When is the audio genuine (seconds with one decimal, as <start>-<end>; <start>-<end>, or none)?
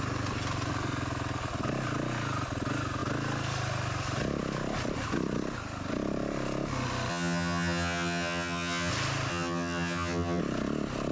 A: 0.0-7.1; 8.9-9.3; 10.4-11.1